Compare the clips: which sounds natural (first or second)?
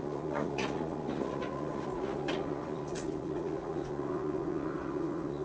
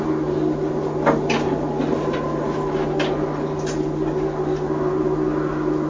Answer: second